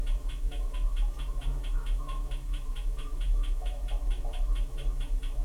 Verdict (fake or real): fake